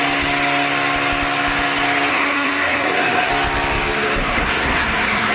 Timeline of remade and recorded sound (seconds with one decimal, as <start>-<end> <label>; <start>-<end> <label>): 0.0-2.1 recorded; 2.1-3.3 remade; 3.3-4.2 recorded; 4.2-5.3 remade